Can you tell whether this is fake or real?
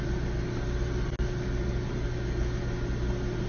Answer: real